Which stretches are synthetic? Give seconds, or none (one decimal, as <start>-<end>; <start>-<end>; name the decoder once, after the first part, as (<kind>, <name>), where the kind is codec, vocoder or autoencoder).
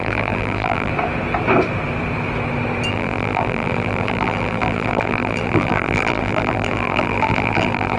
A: 0.0-0.9 (vocoder, BigVGAN v2); 2.9-8.0